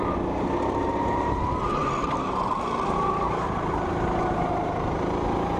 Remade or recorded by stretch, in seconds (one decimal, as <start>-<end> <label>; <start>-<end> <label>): 0.0-5.6 recorded